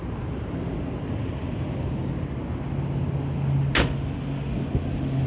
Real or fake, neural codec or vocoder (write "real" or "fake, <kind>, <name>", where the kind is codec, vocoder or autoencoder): real